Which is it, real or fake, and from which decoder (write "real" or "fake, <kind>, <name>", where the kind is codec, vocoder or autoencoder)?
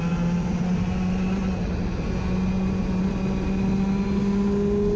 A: real